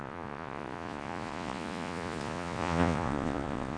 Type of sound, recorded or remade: remade